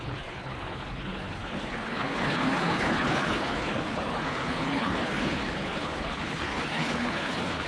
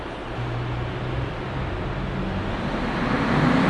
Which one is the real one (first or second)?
second